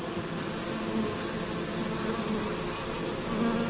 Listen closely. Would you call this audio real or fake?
real